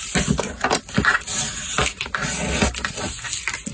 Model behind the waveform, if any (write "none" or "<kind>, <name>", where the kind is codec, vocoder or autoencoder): none